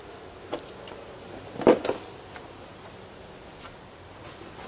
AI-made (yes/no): no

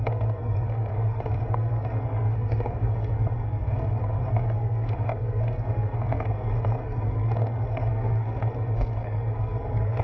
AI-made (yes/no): yes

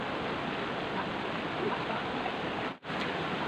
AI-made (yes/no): no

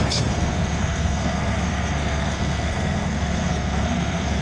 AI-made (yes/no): yes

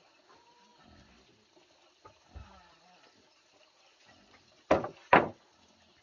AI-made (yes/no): no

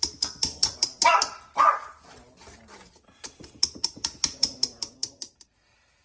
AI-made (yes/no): no